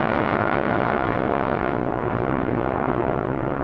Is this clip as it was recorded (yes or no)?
no